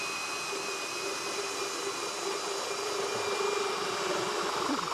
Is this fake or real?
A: real